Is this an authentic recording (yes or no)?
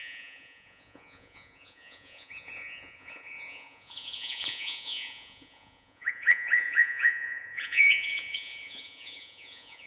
no